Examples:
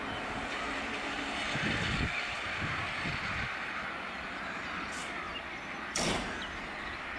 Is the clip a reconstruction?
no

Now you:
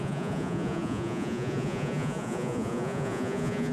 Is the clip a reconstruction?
yes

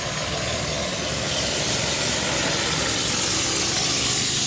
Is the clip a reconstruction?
no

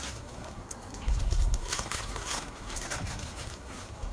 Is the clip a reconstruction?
yes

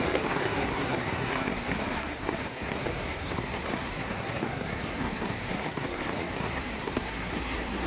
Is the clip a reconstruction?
yes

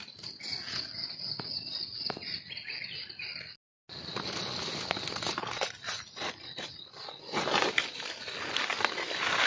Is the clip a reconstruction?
no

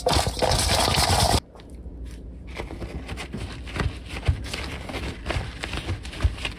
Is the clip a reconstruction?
no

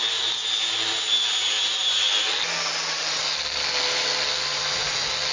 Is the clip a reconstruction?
no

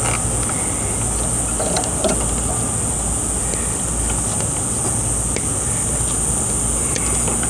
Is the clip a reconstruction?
no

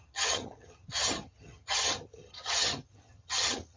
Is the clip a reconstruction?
yes